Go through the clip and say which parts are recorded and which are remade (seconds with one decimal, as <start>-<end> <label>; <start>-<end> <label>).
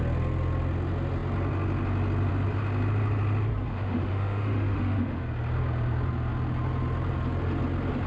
0.0-3.7 recorded; 3.7-5.2 remade; 5.2-8.1 recorded